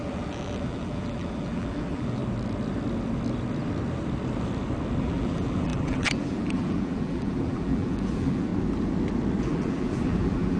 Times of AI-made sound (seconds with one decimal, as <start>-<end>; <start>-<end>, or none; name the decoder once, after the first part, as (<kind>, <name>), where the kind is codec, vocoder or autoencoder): 0.0-2.2 (vocoder, BigVGAN v2); 5.0-8.5; 9.4-10.6